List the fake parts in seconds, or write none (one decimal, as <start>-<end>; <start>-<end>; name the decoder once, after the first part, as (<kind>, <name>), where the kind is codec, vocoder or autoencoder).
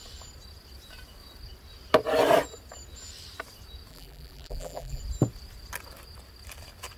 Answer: 3.9-5.0 (vocoder, BigVGAN v2)